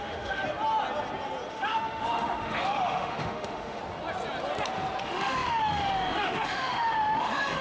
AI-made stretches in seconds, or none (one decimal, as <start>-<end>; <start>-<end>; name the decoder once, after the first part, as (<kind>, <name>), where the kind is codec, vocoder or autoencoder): 0.0-0.4 (autoencoder, DAC-VAE); 1.5-3.8; 5.0-7.6